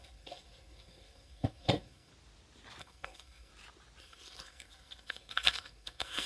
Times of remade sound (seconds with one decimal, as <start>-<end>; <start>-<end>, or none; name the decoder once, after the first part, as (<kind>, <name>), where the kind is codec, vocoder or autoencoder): 0.0-2.1 (codec, SNAC); 2.8-3.5; 4.0-6.3